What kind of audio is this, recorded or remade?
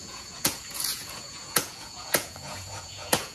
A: remade